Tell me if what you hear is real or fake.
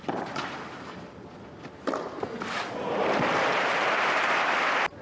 real